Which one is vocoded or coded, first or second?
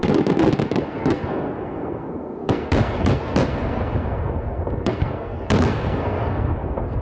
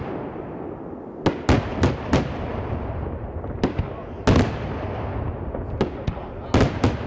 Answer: first